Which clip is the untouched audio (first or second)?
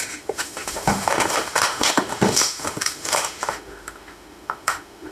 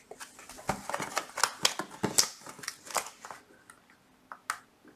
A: second